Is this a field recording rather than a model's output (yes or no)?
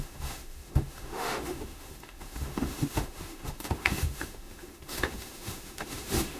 no